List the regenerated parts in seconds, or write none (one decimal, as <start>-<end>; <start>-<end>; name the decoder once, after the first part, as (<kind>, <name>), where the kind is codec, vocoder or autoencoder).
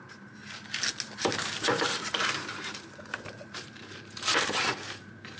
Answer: 0.0-0.4 (vocoder, BigVGAN v2); 1.1-5.4